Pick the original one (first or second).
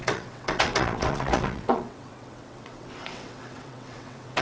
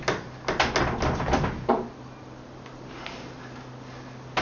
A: second